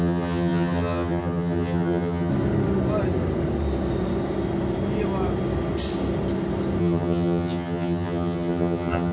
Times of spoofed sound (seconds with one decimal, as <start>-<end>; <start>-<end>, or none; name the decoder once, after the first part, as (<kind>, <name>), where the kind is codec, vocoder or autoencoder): 0.0-2.3 (vocoder, HiFi-GAN); 6.8-9.1